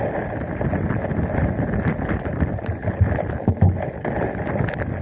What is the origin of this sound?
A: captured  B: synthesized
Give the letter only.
A